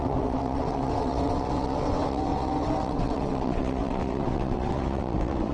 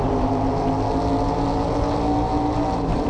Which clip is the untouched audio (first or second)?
second